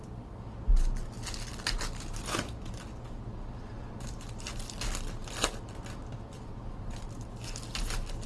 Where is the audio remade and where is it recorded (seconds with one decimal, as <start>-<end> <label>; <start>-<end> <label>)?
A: 0.0-8.3 recorded